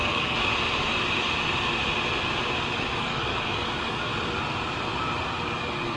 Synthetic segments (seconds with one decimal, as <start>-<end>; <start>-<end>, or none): 0.0-0.5; 2.7-4.1; 5.4-6.0